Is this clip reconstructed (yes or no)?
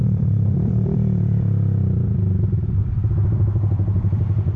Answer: yes